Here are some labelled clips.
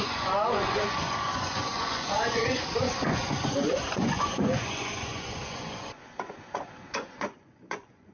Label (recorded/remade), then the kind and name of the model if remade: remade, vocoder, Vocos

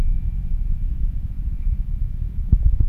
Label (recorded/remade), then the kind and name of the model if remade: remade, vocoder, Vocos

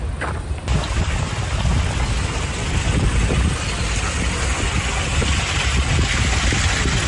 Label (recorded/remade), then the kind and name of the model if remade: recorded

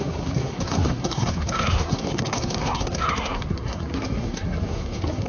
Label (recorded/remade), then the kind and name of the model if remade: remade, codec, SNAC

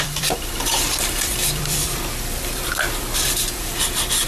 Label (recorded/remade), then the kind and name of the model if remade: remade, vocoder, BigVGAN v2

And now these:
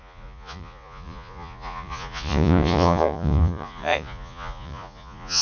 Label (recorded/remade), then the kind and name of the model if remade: remade, vocoder, Vocos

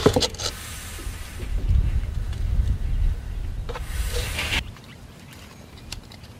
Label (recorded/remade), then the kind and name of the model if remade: remade, vocoder, BigVGAN v2